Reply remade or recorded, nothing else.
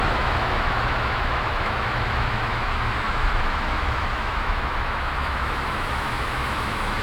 remade